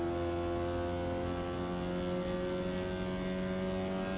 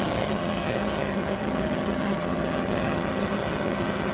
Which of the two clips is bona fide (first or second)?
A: first